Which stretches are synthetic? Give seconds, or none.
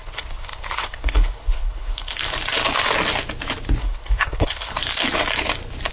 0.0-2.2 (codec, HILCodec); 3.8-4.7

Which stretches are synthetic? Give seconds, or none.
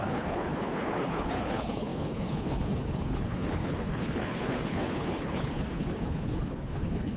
0.0-7.2 (codec, HILCodec)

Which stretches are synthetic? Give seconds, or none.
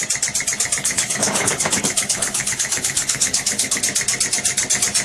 0.8-3.8 (codec, HILCodec)